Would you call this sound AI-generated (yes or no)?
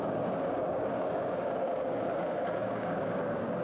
yes